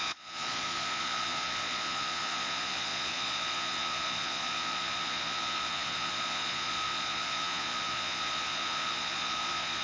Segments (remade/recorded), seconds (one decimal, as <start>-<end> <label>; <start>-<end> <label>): 0.0-9.8 remade